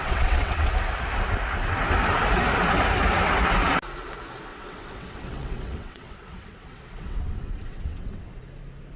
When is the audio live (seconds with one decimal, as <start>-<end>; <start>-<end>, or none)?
0.7-4.5; 8.3-9.0